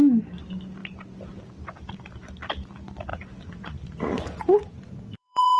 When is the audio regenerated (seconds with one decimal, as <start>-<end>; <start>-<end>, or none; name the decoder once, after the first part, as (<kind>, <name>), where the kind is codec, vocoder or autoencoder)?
3.1-5.6 (vocoder, Vocos)